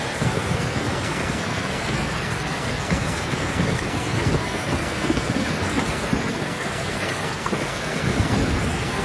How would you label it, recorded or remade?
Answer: remade